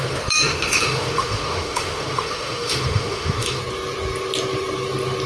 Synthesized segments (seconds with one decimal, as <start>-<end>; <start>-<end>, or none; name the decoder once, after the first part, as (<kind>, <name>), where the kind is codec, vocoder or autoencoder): 0.0-3.6 (autoencoder, DAC-VAE)